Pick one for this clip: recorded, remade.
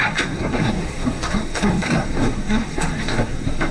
remade